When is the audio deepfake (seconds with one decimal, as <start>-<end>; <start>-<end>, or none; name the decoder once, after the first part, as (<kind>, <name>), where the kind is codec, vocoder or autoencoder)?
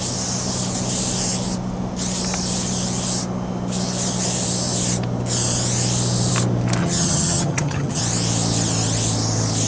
6.8-8.0 (vocoder, HiFi-GAN)